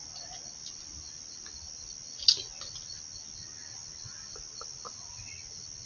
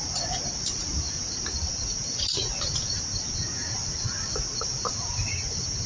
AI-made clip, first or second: second